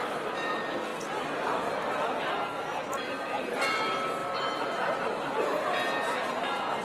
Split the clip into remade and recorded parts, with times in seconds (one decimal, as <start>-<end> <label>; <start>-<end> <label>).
0.0-6.8 recorded